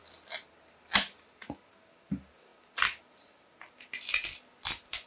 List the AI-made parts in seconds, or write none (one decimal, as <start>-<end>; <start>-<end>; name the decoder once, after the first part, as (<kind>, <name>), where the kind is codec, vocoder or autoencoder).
none